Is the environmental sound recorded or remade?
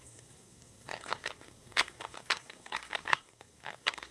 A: remade